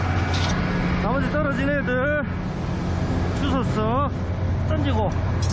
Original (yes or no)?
yes